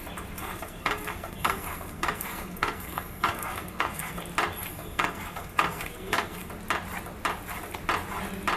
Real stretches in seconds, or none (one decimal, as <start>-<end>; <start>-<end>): 0.0-0.4; 4.2-4.7; 6.5-8.6